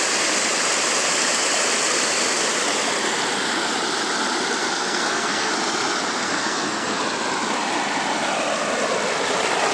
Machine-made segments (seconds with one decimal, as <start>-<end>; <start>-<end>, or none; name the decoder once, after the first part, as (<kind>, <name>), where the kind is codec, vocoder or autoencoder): 4.6-5.5 (codec, SNAC); 6.2-7.0